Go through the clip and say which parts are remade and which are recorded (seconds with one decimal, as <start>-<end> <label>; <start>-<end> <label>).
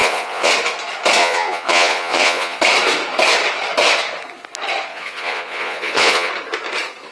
0.0-0.5 remade; 0.5-1.2 recorded; 1.2-2.6 remade; 2.6-4.9 recorded; 4.9-6.3 remade; 6.3-7.1 recorded